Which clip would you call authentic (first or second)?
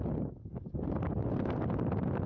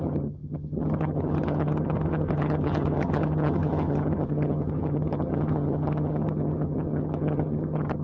first